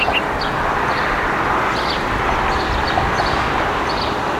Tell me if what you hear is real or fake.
real